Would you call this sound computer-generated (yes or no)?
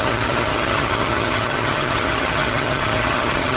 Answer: yes